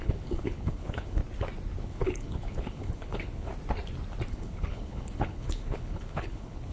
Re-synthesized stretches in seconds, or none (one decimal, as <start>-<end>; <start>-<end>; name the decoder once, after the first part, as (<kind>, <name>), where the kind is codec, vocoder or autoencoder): 0.0-1.2 (codec, HILCodec); 1.8-3.5; 4.3-6.7